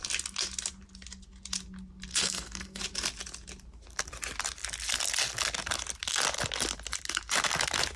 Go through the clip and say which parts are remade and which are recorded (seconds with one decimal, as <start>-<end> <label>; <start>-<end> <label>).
0.0-2.1 recorded; 2.1-2.8 remade; 2.8-8.0 recorded